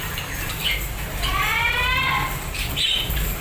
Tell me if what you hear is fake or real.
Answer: fake